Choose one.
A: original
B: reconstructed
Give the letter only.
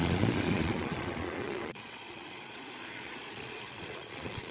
B